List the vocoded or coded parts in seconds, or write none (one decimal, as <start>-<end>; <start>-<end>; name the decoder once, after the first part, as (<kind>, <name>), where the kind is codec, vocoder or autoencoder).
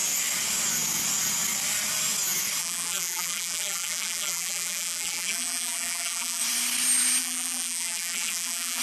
2.6-6.4 (vocoder, BigVGAN v2); 7.2-8.8